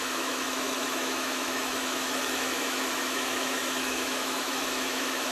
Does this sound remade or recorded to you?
remade